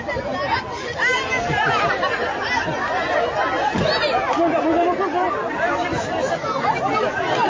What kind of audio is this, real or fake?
real